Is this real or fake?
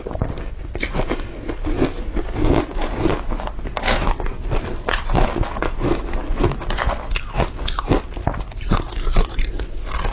real